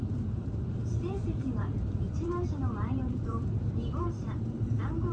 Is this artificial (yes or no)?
yes